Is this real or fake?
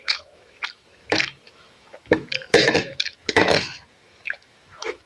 fake